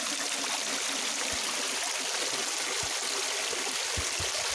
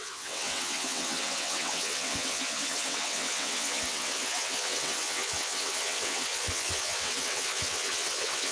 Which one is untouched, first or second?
first